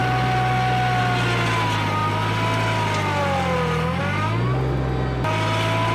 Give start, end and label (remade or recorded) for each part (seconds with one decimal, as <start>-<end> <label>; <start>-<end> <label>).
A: 0.0-5.9 recorded